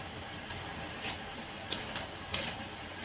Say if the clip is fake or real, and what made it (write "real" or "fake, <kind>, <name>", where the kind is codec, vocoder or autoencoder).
real